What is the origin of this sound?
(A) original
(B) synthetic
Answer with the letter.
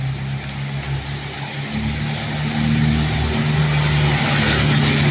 A